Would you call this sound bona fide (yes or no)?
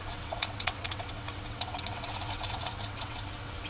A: no